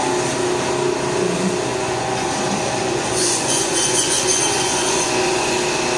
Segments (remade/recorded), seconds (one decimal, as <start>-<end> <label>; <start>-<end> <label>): 0.0-1.7 recorded; 1.7-2.3 remade; 2.3-2.8 recorded; 2.8-5.6 remade; 5.6-6.0 recorded